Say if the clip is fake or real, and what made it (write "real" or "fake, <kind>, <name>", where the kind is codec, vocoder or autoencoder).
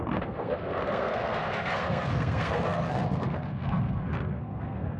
fake, codec, SNAC